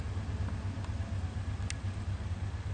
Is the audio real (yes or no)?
yes